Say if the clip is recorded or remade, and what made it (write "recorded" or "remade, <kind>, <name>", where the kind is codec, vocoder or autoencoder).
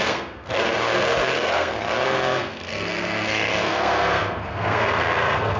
remade, codec, SNAC